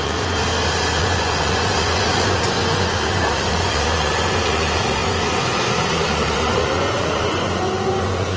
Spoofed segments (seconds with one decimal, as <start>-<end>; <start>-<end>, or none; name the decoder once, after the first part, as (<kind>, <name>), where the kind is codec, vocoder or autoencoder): 0.0-0.4 (vocoder, Vocos); 1.0-8.4